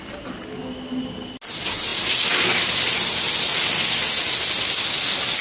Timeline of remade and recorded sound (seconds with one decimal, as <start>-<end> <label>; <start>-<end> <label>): 0.0-5.4 recorded